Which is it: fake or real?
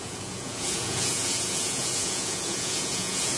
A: fake